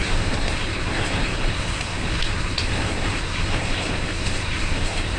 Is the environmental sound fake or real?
fake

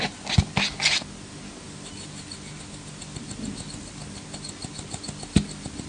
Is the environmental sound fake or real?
real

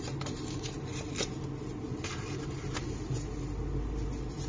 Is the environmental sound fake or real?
real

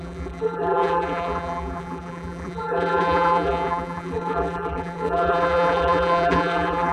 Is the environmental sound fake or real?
fake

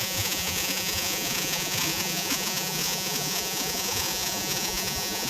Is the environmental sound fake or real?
fake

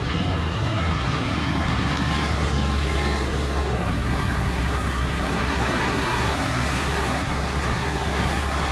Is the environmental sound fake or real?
fake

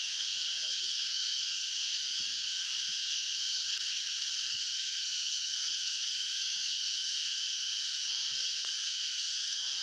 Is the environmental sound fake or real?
fake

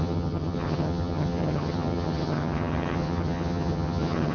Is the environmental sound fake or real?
fake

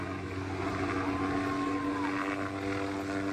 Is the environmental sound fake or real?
real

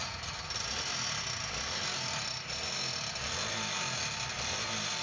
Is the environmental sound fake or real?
real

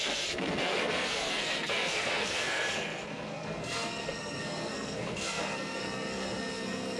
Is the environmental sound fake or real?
fake